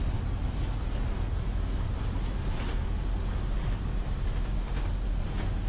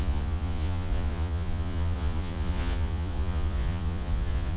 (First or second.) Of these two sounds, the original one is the first